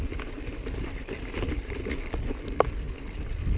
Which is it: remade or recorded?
recorded